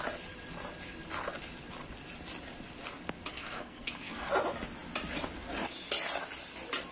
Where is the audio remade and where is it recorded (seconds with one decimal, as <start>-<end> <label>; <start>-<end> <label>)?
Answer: 0.0-3.3 recorded; 3.3-4.3 remade; 4.3-6.9 recorded